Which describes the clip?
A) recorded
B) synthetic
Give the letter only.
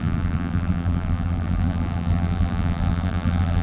B